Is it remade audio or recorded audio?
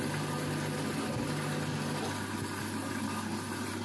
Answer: recorded